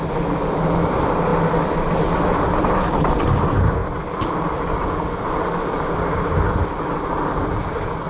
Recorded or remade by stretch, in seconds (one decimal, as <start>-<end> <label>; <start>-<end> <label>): 0.0-8.1 recorded